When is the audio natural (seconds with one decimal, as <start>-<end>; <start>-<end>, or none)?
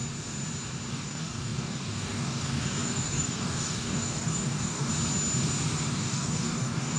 0.0-0.9; 4.9-5.9